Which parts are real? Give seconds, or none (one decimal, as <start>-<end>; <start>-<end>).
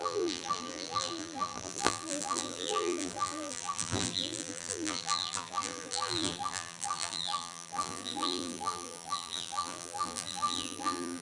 none